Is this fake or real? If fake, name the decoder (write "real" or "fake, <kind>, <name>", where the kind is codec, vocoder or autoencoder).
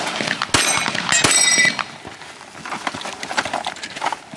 real